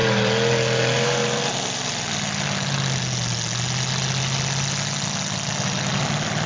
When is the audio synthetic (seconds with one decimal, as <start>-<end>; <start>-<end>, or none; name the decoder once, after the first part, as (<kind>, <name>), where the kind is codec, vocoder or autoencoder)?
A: none